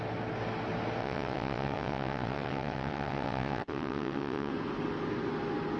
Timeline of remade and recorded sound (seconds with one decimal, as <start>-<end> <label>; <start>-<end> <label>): 0.0-1.0 recorded; 1.0-4.5 remade; 4.5-5.8 recorded